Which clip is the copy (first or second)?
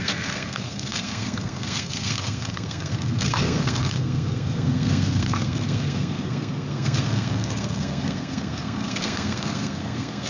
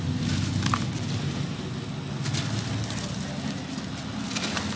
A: first